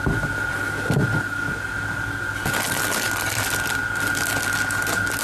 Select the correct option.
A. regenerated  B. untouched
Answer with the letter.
B